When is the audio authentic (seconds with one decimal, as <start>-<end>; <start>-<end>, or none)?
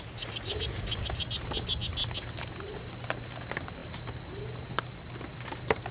0.0-5.9